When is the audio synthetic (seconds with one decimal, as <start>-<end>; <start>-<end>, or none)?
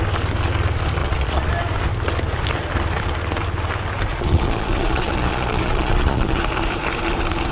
1.0-1.5; 4.1-6.4